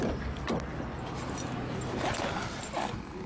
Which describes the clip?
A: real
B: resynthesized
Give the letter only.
A